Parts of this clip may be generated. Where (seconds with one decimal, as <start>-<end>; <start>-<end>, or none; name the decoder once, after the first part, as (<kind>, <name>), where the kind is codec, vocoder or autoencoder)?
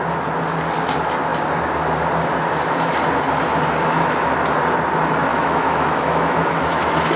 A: 5.3-6.8 (autoencoder, DAC-VAE)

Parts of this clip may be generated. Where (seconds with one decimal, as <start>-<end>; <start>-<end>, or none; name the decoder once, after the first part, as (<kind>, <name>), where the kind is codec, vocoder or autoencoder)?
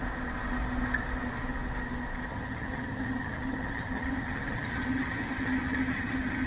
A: 2.3-6.5 (vocoder, HiFi-GAN)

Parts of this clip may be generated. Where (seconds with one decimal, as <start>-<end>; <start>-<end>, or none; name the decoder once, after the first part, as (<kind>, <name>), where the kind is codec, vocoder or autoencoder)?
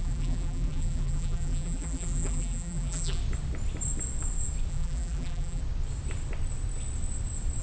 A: 0.0-3.2 (vocoder, BigVGAN v2); 4.7-5.6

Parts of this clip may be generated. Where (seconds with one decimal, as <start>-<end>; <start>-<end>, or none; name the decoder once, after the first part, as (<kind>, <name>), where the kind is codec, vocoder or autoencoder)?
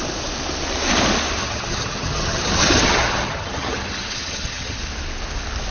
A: 1.4-4.8 (vocoder, HiFi-GAN)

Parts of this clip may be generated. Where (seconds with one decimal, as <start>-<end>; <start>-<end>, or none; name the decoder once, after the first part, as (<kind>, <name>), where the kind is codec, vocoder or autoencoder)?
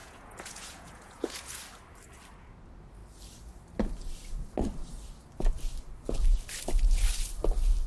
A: 0.0-1.5 (vocoder, Vocos)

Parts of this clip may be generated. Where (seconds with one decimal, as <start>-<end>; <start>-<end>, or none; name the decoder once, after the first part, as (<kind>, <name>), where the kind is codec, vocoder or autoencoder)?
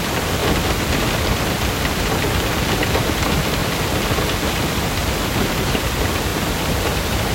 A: 0.0-0.4 (vocoder, BigVGAN v2); 1.2-3.6; 5.5-6.3